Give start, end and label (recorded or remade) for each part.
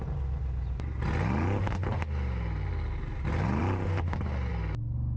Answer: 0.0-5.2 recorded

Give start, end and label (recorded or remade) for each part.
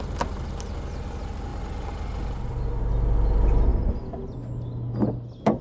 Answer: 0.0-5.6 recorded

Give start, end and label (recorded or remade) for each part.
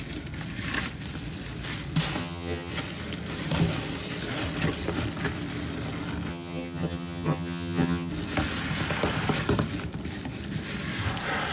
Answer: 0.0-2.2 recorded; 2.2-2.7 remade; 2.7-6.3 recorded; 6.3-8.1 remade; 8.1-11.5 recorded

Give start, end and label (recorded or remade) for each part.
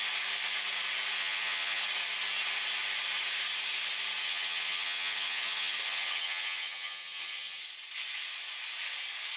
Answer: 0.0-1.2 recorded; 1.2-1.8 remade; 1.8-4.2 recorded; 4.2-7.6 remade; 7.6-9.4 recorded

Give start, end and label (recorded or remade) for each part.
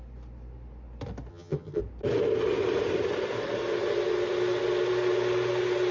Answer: 0.0-1.3 recorded; 1.3-1.8 remade; 1.8-5.9 recorded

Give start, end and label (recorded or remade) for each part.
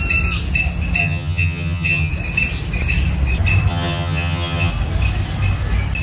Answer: 0.0-1.0 recorded; 1.0-2.1 remade; 2.1-3.7 recorded; 3.7-4.7 remade; 4.7-6.0 recorded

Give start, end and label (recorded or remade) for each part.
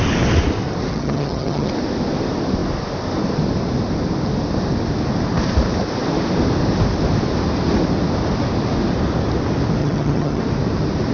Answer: 0.0-0.9 recorded; 0.9-1.7 remade; 1.7-9.8 recorded; 9.8-10.4 remade; 10.4-11.1 recorded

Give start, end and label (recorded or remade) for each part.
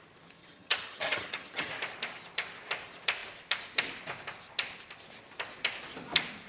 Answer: 0.0-0.4 recorded; 0.4-1.7 remade; 1.7-6.5 recorded